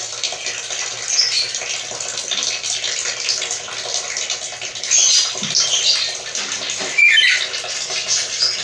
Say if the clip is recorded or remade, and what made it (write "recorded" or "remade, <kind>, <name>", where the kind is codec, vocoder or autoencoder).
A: recorded